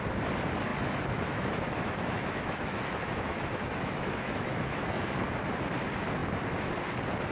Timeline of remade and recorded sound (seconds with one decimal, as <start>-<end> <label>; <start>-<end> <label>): 0.0-0.7 recorded; 0.7-5.1 remade; 5.1-7.3 recorded